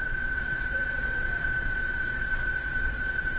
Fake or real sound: fake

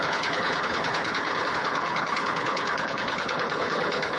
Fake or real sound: fake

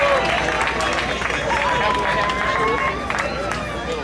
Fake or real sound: real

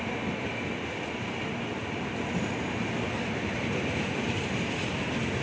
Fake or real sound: real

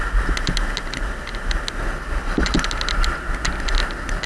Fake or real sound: real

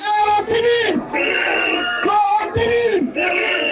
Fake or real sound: fake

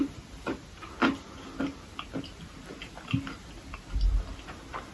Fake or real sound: real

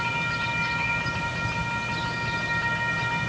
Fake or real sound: real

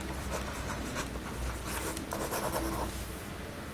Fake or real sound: real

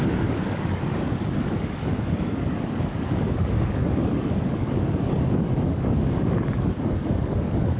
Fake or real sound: fake